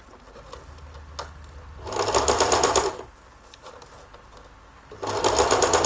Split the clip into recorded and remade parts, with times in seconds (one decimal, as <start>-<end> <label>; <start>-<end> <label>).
0.0-2.9 recorded; 2.9-3.7 remade; 3.7-5.9 recorded